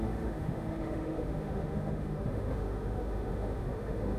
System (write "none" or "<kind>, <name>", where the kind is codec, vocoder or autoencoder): autoencoder, DAC-VAE